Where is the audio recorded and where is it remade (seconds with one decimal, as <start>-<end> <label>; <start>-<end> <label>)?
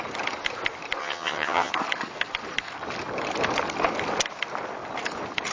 0.0-1.0 recorded; 1.0-1.7 remade; 1.7-5.5 recorded